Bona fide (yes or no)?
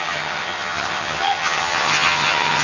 no